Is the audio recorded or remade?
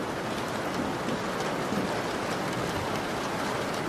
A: recorded